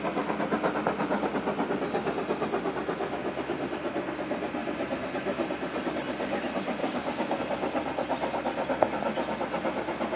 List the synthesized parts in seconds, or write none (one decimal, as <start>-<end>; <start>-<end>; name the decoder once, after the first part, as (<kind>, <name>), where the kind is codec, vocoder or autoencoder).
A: 6.8-7.4 (codec, DAC)

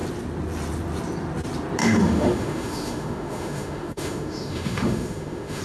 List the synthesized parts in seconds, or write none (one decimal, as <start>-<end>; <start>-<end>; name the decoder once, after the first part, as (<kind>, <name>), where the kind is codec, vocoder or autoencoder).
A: 1.8-5.6 (autoencoder, DAC-VAE)

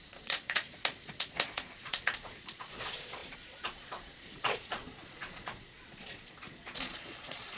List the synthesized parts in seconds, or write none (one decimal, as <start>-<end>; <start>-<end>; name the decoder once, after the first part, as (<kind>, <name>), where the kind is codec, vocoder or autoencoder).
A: 0.0-7.6 (vocoder, Vocos)

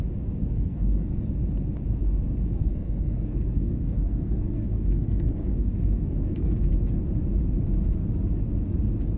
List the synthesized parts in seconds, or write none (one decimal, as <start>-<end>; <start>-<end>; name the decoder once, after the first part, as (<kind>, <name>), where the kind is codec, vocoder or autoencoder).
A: 0.4-1.2 (codec, SNAC); 2.6-6.7

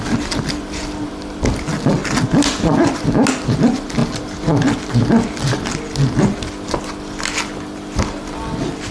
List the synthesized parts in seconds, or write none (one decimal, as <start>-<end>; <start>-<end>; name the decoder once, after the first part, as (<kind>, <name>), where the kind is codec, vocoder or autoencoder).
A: none